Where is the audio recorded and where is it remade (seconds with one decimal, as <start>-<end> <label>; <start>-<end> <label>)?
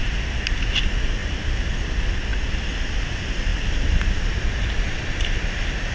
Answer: 0.0-1.2 recorded; 1.2-1.9 remade; 1.9-5.9 recorded